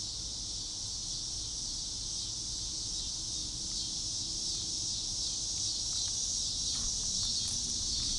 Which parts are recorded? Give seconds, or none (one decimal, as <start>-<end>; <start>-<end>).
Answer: 0.0-8.2